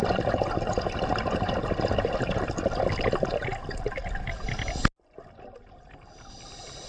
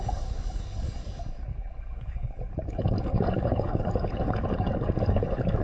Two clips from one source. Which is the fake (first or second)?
second